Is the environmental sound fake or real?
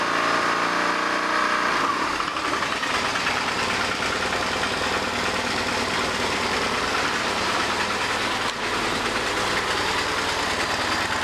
real